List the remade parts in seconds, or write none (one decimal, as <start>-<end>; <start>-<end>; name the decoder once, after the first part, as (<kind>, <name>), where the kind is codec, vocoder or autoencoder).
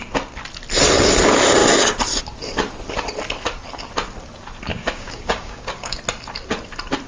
4.7-6.0 (codec, DAC)